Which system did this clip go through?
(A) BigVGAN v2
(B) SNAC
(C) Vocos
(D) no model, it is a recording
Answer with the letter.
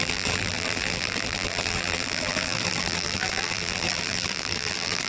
A